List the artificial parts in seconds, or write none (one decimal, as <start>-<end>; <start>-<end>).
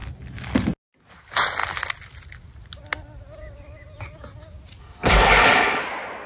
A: 4.8-5.8